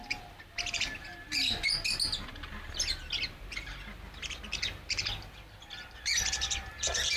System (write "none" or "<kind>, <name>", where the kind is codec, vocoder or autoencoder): none